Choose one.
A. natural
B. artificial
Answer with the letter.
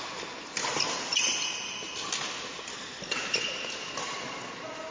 A